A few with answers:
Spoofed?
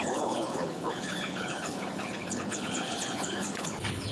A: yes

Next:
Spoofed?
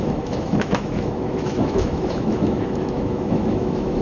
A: yes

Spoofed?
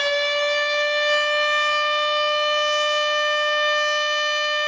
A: no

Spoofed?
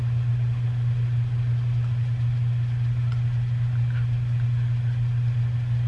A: no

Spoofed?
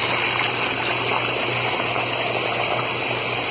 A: no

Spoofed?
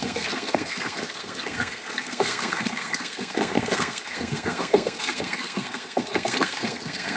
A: yes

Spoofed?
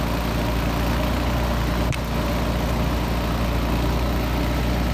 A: no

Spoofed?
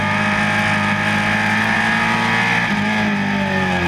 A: no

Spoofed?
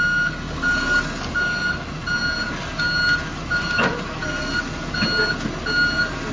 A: no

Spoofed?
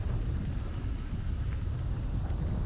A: no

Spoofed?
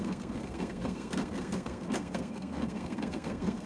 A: yes